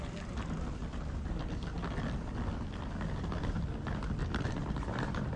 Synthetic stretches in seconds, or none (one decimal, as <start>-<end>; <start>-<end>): 0.9-1.4; 4.2-5.4